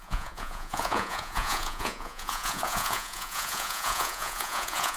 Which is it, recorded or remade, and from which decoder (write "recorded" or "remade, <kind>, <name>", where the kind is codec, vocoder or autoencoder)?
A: remade, vocoder, Vocos